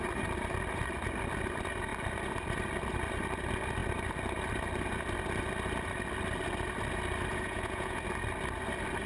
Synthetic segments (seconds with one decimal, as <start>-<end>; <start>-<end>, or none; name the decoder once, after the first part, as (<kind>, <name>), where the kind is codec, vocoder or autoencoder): 7.3-8.0 (vocoder, Vocos)